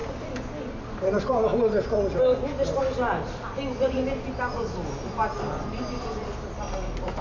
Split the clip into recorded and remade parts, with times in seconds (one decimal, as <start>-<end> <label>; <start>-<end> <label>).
0.0-7.2 recorded